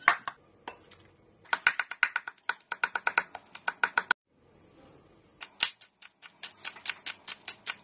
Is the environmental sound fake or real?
real